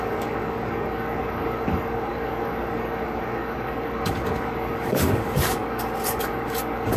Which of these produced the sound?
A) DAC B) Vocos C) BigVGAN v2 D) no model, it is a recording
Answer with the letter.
A